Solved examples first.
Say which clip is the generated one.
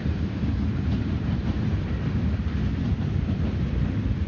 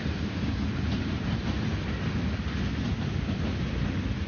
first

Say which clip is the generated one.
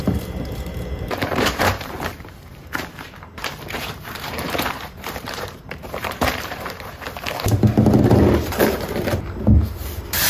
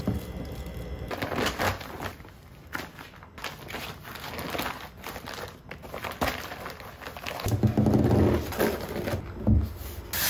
first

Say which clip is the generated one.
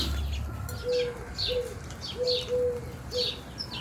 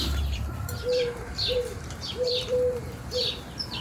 second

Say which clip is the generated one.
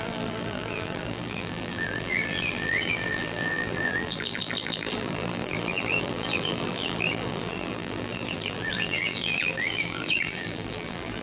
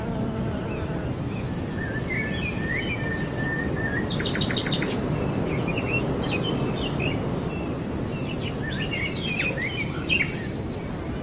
first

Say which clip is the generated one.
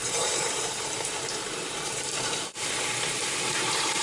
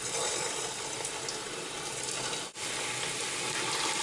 first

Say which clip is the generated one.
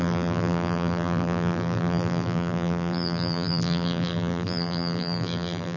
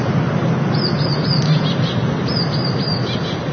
first